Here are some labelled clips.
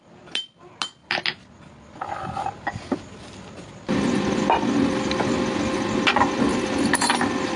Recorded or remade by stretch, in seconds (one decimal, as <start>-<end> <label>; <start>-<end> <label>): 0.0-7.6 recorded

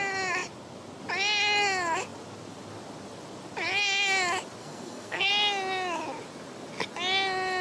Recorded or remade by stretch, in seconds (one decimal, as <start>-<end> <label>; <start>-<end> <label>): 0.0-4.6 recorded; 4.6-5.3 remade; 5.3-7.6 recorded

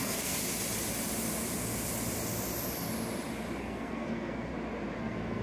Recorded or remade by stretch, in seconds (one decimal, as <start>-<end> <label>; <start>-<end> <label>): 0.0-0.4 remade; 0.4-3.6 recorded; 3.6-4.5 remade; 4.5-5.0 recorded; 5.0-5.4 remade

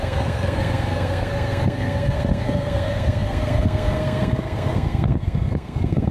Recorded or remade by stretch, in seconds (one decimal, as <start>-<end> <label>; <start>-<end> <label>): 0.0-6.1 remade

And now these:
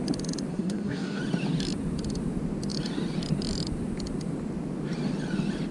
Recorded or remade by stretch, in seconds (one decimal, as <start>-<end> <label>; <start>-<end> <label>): 0.0-0.5 recorded; 0.5-1.2 remade; 1.2-5.7 recorded

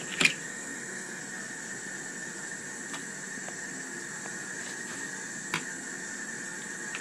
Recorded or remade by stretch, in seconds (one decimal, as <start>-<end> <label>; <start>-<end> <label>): 0.0-0.5 recorded; 0.5-1.2 remade; 1.2-7.0 recorded

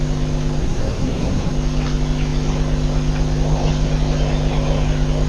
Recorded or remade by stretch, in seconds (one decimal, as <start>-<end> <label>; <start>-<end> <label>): 0.0-0.6 recorded; 0.6-1.5 remade; 1.5-5.3 recorded

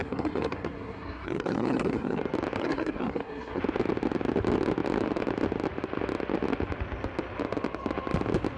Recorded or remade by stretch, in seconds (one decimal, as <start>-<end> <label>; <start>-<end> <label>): 0.0-2.2 remade; 2.2-2.6 recorded; 2.6-3.6 remade; 3.6-8.6 recorded